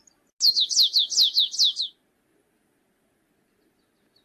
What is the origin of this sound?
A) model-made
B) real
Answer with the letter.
B